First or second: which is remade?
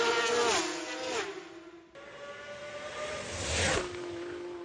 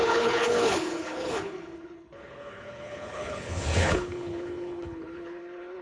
second